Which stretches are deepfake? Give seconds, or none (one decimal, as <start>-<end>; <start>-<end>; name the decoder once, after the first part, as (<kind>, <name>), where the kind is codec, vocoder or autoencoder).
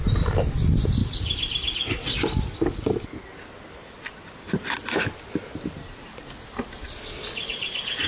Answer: none